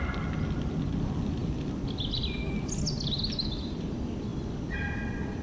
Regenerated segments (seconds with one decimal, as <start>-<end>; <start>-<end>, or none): none

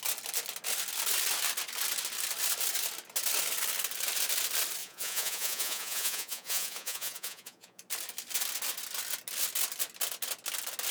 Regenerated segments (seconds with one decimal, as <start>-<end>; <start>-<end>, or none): 4.8-7.8

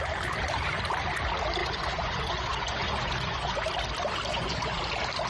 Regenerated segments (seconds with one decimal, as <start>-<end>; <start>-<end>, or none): 1.6-3.6; 4.3-4.8

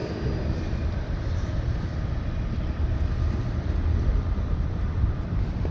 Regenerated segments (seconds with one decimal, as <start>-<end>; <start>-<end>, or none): 3.4-5.7

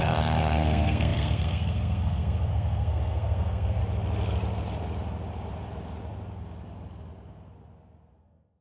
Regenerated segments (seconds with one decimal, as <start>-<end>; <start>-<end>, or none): 0.0-3.8; 8.2-8.6

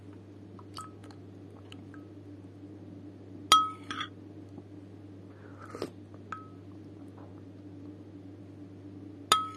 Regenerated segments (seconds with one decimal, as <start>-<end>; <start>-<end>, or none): none